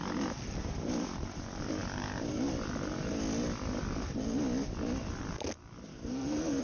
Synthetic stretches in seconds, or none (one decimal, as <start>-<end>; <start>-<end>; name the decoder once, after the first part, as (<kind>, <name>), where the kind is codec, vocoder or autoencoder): 5.9-6.6 (codec, SNAC)